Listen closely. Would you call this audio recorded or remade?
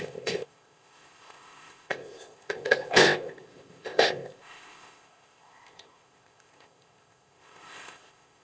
remade